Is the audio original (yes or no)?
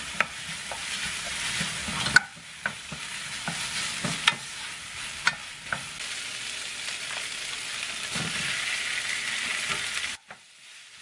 yes